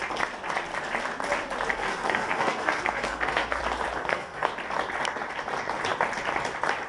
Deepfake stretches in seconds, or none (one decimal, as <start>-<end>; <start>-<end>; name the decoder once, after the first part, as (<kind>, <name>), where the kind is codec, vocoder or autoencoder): 1.7-3.6 (codec, SNAC); 4.0-4.5